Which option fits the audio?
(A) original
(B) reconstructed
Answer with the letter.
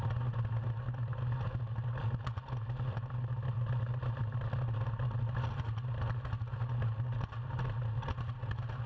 A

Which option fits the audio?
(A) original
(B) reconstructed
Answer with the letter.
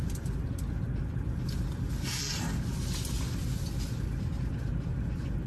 A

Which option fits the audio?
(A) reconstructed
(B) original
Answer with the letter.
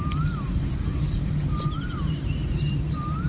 A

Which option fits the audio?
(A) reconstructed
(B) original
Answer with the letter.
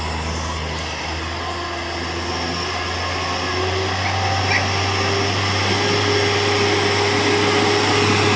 B